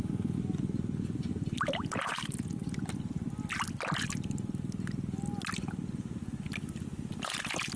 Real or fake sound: real